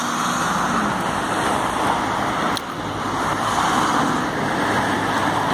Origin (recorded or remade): recorded